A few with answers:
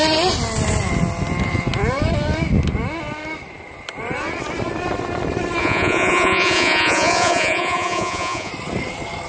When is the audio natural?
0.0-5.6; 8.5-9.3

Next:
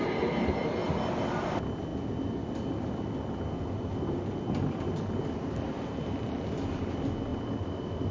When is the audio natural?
0.0-8.1

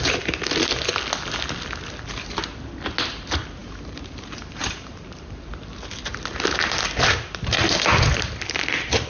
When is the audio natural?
0.0-3.6; 5.5-9.1

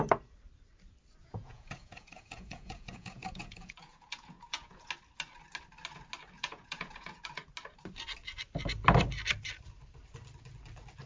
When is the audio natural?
0.0-1.2; 4.9-6.4; 7.4-11.1